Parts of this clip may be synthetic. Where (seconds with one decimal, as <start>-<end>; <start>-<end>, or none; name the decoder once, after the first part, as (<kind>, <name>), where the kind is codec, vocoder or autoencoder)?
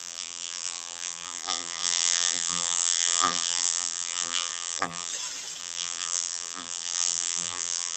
0.0-5.1 (vocoder, BigVGAN v2); 5.6-8.0